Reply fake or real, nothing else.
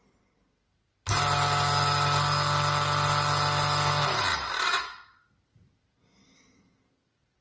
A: real